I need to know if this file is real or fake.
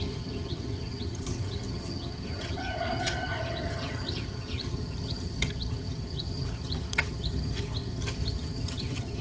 fake